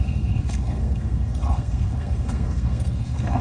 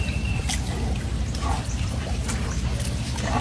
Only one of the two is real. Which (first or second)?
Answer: second